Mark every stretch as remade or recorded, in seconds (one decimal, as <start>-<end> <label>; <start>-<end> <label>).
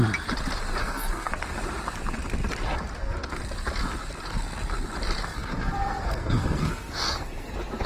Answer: 0.0-0.8 recorded; 0.8-1.3 remade; 1.3-5.3 recorded; 5.3-7.5 remade; 7.5-7.9 recorded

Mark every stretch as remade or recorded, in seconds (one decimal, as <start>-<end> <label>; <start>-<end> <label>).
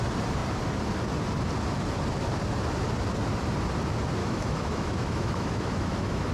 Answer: 0.0-4.2 recorded; 4.2-6.3 remade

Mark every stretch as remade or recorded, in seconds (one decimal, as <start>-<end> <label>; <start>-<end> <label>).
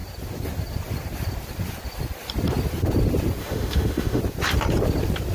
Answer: 0.0-3.4 recorded; 3.4-4.2 remade; 4.2-5.3 recorded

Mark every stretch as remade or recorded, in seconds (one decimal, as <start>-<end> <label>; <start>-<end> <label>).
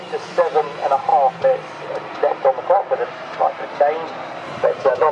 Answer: 0.0-1.1 remade; 1.1-3.6 recorded; 3.6-5.1 remade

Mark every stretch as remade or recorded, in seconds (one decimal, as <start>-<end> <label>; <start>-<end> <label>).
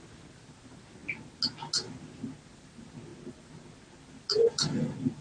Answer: 0.0-5.2 recorded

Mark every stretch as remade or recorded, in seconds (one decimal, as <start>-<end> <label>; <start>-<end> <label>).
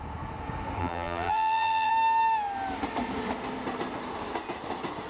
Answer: 0.0-0.8 recorded; 0.8-1.9 remade; 1.9-5.1 recorded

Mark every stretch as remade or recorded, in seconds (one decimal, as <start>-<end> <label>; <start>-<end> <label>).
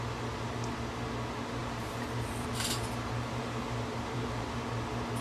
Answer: 0.0-1.6 recorded; 1.6-4.6 remade; 4.6-5.2 recorded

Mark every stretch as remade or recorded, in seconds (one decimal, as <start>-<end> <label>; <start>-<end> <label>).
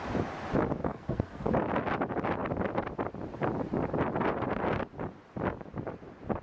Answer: 0.0-0.8 recorded; 0.8-1.5 remade; 1.5-6.4 recorded